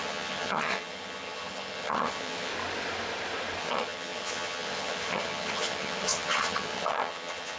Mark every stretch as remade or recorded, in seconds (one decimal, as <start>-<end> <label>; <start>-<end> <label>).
0.0-2.5 remade; 2.5-3.6 recorded; 3.6-7.6 remade